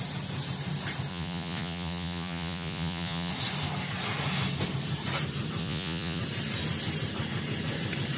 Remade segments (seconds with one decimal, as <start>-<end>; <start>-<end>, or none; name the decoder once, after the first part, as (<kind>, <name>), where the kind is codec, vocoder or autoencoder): 1.1-3.3 (vocoder, Vocos); 5.6-6.2